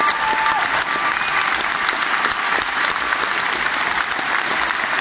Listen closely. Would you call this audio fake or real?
real